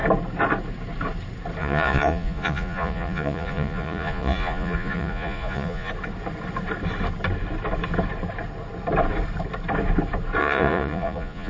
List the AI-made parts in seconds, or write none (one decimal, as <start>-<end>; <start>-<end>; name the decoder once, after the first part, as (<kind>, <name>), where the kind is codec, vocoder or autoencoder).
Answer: 1.6-5.9 (vocoder, Vocos); 10.4-11.5